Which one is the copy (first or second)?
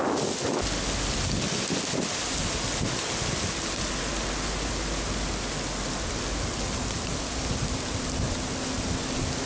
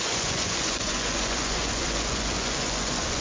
second